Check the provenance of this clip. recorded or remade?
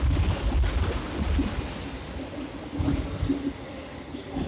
recorded